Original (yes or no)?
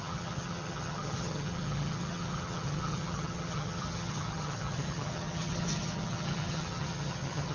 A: no